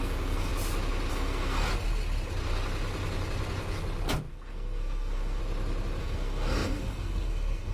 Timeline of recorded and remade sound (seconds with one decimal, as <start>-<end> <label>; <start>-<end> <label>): 0.0-0.5 remade; 0.5-1.1 recorded; 1.1-1.7 remade; 1.7-4.3 recorded; 4.3-5.4 remade; 5.4-6.0 recorded; 6.0-7.7 remade